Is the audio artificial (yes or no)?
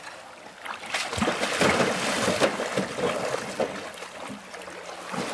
no